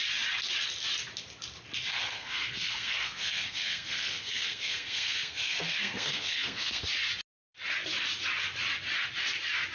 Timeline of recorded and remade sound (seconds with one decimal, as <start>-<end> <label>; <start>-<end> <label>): 0.0-1.9 recorded; 1.9-6.8 remade; 6.8-9.7 recorded